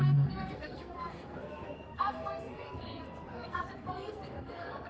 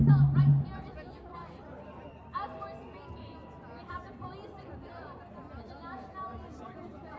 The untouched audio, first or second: second